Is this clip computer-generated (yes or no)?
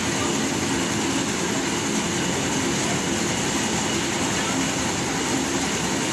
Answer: no